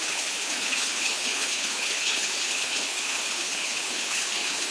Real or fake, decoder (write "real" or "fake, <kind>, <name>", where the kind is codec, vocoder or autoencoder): fake, codec, HILCodec